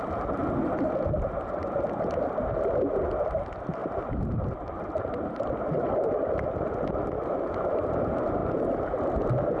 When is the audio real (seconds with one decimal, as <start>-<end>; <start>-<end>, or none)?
0.0-3.8; 5.5-9.6